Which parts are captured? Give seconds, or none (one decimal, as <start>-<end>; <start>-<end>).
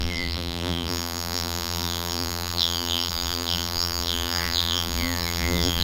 none